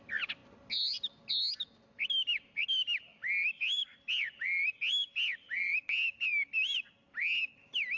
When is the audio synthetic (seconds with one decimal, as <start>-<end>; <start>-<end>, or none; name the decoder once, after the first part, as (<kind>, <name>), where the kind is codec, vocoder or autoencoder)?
none